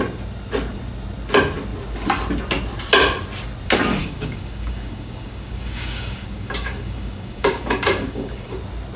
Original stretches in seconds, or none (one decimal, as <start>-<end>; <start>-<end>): 0.0-4.0; 8.6-9.0